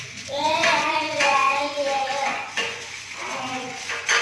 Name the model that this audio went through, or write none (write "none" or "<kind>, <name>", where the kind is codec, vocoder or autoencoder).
vocoder, Vocos